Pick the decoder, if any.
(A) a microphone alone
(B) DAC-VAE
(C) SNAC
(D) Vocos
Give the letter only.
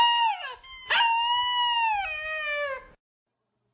A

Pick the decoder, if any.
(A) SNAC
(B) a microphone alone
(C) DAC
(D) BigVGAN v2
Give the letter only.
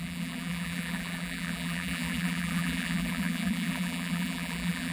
D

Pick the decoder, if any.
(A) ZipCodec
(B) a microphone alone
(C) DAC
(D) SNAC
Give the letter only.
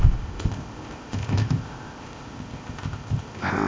A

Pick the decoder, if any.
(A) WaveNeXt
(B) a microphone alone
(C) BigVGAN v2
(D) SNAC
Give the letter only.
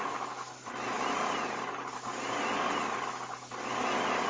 B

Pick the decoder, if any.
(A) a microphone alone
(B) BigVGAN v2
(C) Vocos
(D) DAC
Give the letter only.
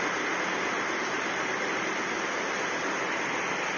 A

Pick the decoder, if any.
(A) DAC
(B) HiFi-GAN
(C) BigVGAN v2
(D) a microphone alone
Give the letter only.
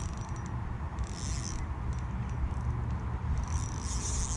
D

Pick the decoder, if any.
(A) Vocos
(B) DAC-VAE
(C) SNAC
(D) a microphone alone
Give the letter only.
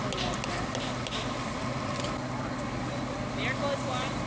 D